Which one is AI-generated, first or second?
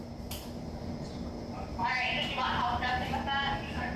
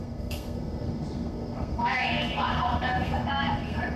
second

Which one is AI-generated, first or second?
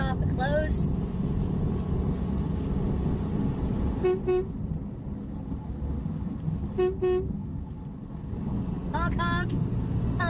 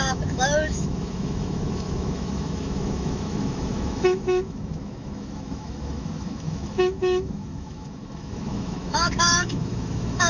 second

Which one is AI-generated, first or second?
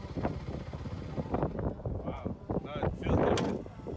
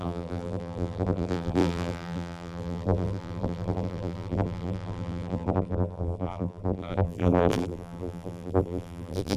second